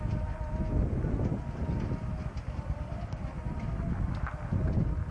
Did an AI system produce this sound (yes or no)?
no